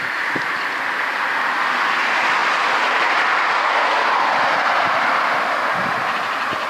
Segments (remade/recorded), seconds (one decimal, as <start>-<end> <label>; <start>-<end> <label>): 0.0-2.4 recorded; 2.4-5.8 remade; 5.8-6.7 recorded